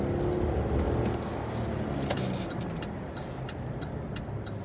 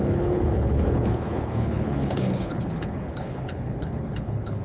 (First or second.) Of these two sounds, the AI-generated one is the second